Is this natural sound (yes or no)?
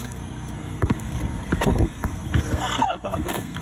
no